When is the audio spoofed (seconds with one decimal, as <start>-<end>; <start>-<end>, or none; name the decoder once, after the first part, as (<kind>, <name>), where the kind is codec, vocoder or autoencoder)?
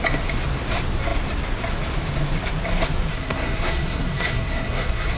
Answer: 3.1-5.2 (codec, SNAC)